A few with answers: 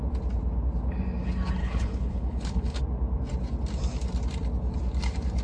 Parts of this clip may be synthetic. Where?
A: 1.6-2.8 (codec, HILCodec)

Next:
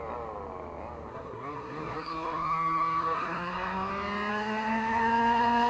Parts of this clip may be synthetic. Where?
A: 1.1-3.9 (codec, SNAC); 4.3-5.7

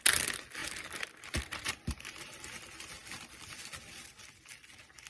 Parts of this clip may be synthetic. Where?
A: none

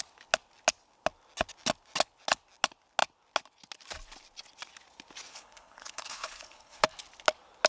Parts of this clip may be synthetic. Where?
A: 5.3-6.8 (codec, HILCodec)

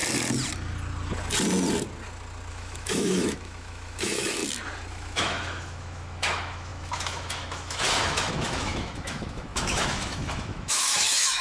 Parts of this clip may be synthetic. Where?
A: 2.5-4.4 (autoencoder, DAC-VAE); 4.9-11.4

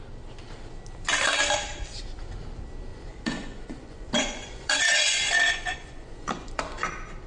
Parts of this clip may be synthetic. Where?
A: 2.9-6.6 (vocoder, Vocos)

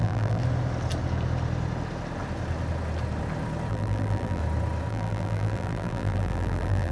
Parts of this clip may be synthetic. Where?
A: 0.0-0.4 (vocoder, BigVGAN v2); 3.7-4.4; 4.9-6.9